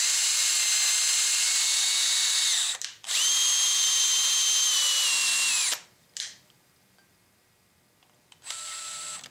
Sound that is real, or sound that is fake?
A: real